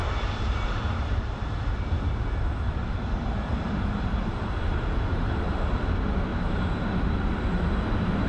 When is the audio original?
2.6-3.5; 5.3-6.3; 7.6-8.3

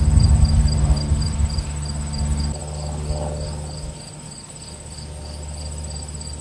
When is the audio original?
0.0-6.4

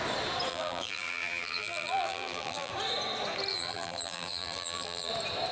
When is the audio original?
0.0-0.5; 2.7-3.5; 5.1-5.5

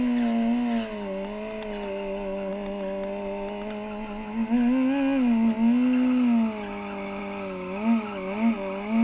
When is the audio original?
0.0-9.0

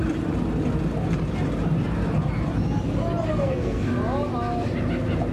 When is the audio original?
0.0-3.3; 3.9-5.3